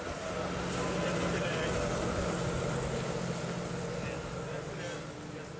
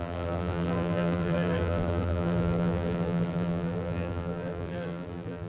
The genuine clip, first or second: first